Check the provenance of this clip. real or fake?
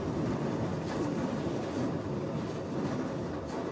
fake